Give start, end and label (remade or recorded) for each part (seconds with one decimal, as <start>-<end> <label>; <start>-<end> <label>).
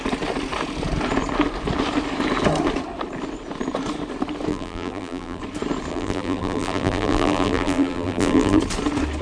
0.0-4.5 recorded; 4.5-5.4 remade; 5.4-5.9 recorded; 5.9-8.6 remade; 8.6-9.2 recorded